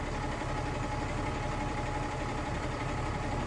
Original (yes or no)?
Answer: no